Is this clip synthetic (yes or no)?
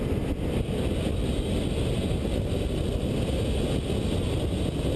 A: no